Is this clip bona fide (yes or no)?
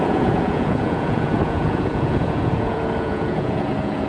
no